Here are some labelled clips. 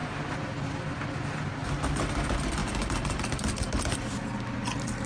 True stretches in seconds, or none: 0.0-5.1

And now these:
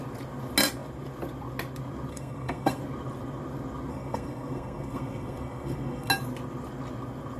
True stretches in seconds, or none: 0.0-2.1; 2.8-3.9; 6.1-7.4